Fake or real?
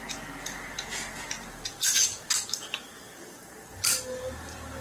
real